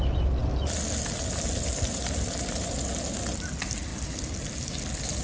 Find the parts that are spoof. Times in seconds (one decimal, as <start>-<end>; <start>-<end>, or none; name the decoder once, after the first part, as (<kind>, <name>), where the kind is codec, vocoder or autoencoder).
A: none